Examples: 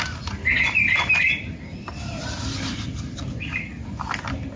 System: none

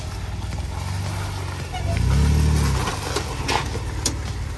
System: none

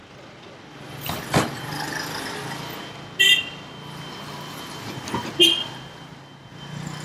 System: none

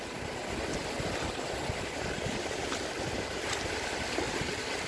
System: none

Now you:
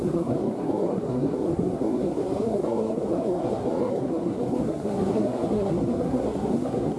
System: codec, SNAC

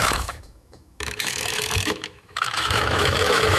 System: autoencoder, DAC-VAE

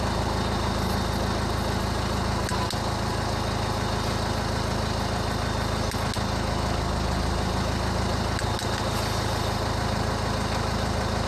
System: none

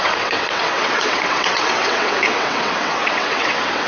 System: vocoder, WaveNeXt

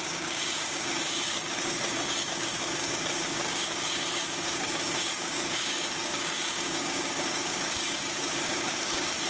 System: codec, DAC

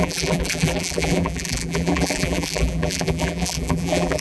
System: vocoder, BigVGAN v2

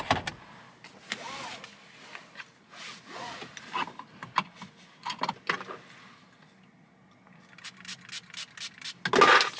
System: none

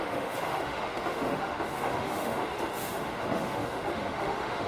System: autoencoder, DAC-VAE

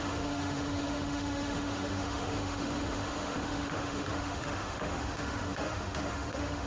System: autoencoder, DAC-VAE